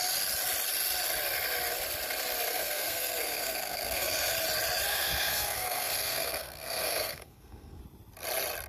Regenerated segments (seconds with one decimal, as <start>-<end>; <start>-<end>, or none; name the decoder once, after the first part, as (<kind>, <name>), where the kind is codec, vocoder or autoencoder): 2.5-4.3 (codec, SNAC); 4.9-7.8